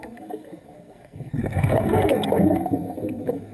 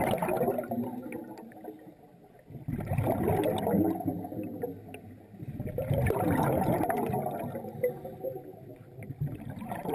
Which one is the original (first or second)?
second